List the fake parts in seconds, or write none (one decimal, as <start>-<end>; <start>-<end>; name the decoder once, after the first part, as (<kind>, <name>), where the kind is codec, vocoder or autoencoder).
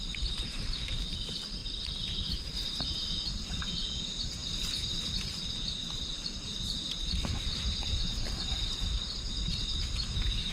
0.0-4.4 (vocoder, BigVGAN v2); 6.4-10.5